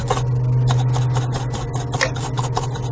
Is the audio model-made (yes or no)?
no